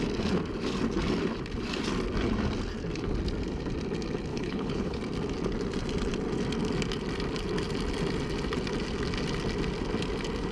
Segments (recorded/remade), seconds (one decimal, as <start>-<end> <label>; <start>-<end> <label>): 0.0-4.3 recorded; 4.3-5.0 remade; 5.0-10.5 recorded